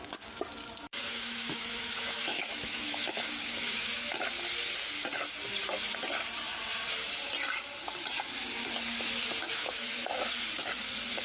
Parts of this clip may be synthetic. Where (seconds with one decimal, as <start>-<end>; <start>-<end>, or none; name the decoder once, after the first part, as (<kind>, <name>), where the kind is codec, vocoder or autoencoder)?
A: 0.9-4.1 (autoencoder, DAC-VAE); 9.4-10.1